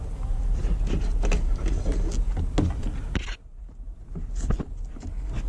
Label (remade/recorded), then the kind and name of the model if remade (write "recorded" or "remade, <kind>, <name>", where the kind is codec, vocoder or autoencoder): recorded